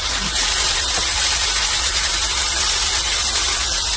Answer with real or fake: real